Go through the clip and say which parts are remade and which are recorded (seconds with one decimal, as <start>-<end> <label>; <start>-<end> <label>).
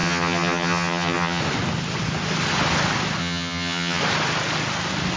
0.0-1.4 remade; 1.4-3.2 recorded; 3.2-4.0 remade; 4.0-5.2 recorded